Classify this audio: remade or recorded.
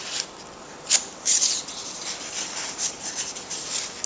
recorded